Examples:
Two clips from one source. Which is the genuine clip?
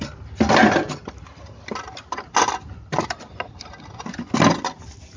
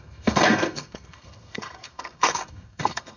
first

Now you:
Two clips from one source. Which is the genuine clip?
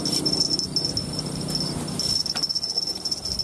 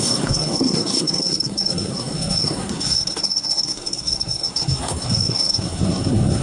first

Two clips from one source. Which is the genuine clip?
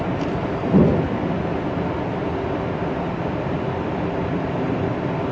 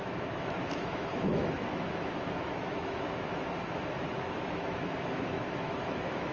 first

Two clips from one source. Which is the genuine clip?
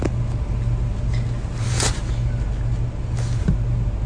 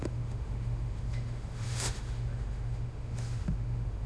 first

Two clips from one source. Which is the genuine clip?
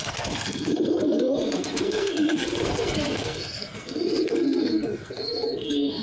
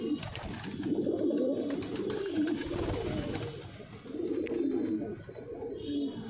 second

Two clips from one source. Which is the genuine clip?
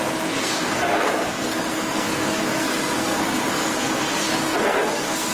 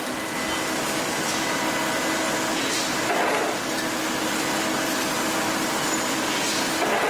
second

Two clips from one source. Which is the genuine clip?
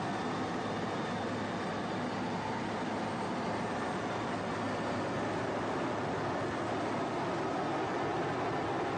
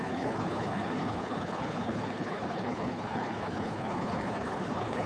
first